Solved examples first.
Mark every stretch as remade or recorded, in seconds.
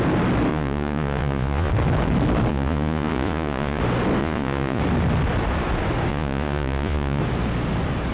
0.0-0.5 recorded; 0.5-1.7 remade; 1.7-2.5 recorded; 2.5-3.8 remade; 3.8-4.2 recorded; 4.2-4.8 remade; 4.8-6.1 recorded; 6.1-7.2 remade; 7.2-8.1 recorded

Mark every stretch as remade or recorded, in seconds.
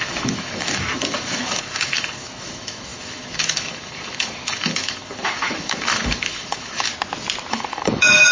0.0-6.9 remade; 6.9-7.5 recorded; 7.5-8.3 remade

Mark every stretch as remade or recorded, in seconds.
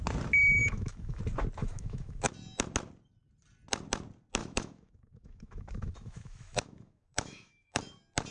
0.0-0.6 recorded; 0.6-1.2 remade; 1.2-1.6 recorded; 1.6-2.3 remade; 2.3-4.4 recorded; 4.4-7.8 remade; 7.8-8.3 recorded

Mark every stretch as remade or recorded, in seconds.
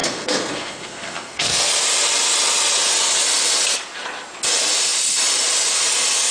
0.0-1.6 remade; 1.6-6.3 recorded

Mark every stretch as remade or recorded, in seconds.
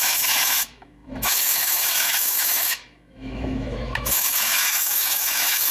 0.0-5.7 remade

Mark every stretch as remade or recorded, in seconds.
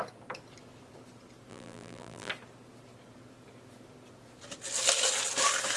0.0-1.5 recorded; 1.5-2.3 remade; 2.3-5.8 recorded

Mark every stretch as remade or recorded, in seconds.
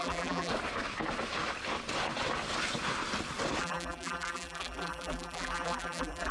0.0-0.5 remade; 0.5-3.6 recorded; 3.6-6.3 remade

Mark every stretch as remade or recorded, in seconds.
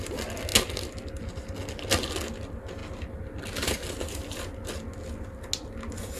0.0-6.2 recorded